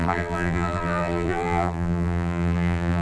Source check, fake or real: fake